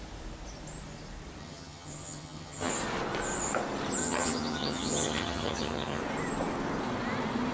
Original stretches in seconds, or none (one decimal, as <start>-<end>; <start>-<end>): 0.0-1.4; 2.7-4.0; 6.0-7.5

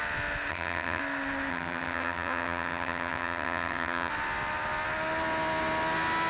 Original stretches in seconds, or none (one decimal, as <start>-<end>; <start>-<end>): 0.0-0.5; 1.0-1.5; 4.1-6.3